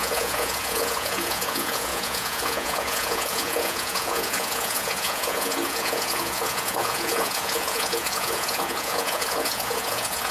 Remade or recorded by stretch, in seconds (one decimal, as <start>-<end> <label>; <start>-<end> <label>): 0.0-10.3 remade